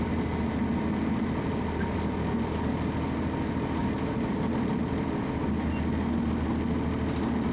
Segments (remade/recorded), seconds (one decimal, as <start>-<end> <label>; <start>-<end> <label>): 0.0-3.8 recorded; 3.8-5.4 remade; 5.4-7.5 recorded